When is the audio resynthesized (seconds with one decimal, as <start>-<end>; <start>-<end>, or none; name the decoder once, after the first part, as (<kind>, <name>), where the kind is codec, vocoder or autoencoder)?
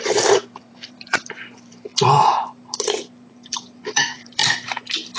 0.0-1.9 (vocoder, BigVGAN v2); 3.3-4.4